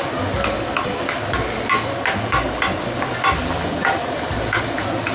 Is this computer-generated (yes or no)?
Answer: no